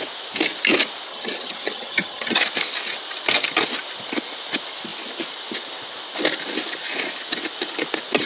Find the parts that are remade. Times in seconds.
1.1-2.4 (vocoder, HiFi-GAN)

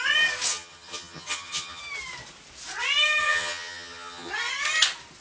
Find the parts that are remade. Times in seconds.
0.5-1.8 (vocoder, HiFi-GAN); 3.2-4.3

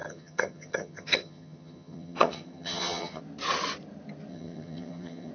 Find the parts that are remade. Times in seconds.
0.0-3.2 (vocoder, HiFi-GAN); 4.3-5.3

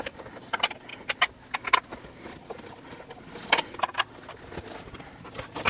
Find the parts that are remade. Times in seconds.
none

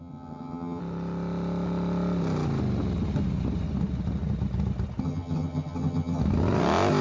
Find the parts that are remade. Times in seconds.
0.0-0.8 (vocoder, HiFi-GAN); 5.0-6.2

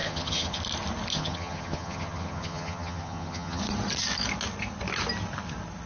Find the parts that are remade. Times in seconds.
0.0-0.6 (vocoder, HiFi-GAN); 1.1-3.6

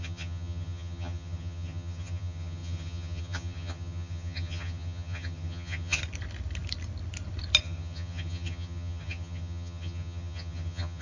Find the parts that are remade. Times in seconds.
0.0-6.0 (vocoder, HiFi-GAN); 7.6-11.0